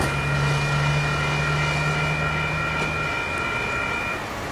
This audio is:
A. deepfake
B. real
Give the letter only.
B